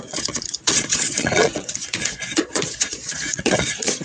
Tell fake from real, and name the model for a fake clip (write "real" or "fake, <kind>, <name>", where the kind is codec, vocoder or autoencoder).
fake, vocoder, Vocos